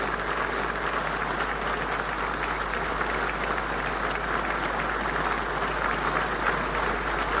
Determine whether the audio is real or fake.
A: real